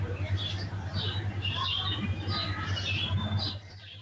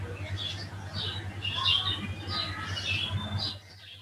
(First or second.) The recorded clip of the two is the second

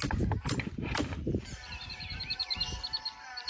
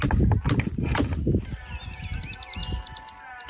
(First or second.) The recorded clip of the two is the second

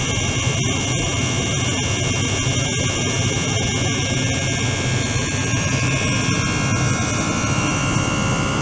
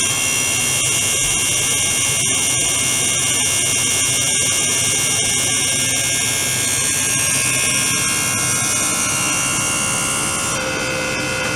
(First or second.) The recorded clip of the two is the second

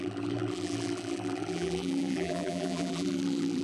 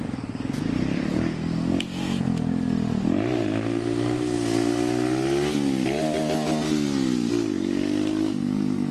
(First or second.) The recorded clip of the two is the second